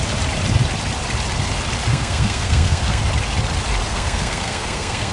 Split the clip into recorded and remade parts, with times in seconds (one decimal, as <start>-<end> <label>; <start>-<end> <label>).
0.0-1.9 recorded; 1.9-3.0 remade; 3.0-3.9 recorded; 3.9-5.1 remade